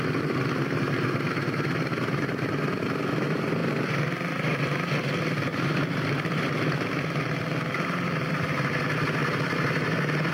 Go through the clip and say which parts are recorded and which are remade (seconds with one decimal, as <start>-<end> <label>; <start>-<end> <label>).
0.0-3.6 remade; 3.6-5.1 recorded; 5.1-9.2 remade; 9.2-10.3 recorded